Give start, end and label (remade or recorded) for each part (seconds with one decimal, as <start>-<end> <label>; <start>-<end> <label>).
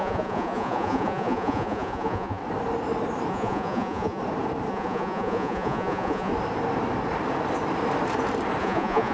0.0-2.4 remade; 2.4-3.3 recorded; 3.3-4.2 remade; 4.2-4.7 recorded; 4.7-6.3 remade; 6.3-8.6 recorded; 8.6-9.1 remade